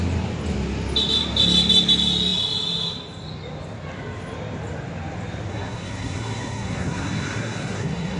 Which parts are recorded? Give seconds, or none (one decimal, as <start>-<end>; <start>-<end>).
0.0-5.5